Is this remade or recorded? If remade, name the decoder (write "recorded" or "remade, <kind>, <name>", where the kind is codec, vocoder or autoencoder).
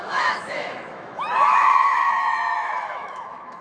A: remade, autoencoder, DAC-VAE